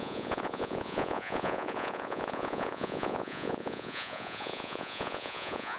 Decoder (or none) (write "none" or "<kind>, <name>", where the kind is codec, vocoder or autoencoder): vocoder, Vocos